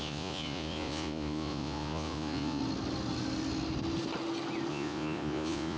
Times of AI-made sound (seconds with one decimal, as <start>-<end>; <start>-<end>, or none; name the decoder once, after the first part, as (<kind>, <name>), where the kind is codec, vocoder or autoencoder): 0.0-2.6 (vocoder, Vocos); 4.7-5.8

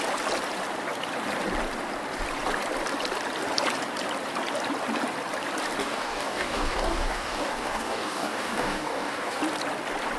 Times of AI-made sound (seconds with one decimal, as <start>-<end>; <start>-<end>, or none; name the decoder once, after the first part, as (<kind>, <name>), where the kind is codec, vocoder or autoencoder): 5.8-9.4 (codec, DAC)

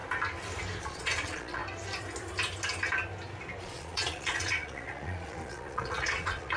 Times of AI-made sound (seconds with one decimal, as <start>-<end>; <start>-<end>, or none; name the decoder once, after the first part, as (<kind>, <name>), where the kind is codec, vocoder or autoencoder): 0.8-1.6 (vocoder, Vocos); 3.6-6.6

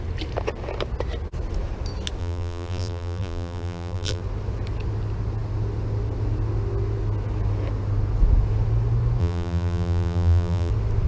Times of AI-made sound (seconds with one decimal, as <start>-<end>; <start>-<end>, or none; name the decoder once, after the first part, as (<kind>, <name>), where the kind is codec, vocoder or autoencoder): 2.2-4.2 (vocoder, BigVGAN v2); 9.2-10.7

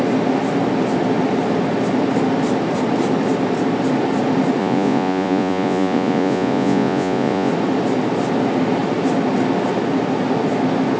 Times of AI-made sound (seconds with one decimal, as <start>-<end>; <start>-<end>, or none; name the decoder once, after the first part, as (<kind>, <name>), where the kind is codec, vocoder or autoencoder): 4.6-7.5 (vocoder, Vocos)

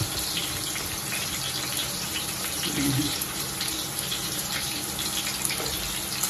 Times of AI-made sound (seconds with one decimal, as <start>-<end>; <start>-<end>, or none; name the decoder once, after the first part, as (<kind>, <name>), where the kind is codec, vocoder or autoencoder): 1.8-4.7 (vocoder, BigVGAN v2)